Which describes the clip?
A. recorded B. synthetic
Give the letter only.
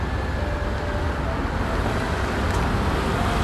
A